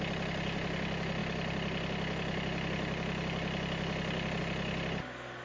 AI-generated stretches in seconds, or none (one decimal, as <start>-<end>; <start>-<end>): none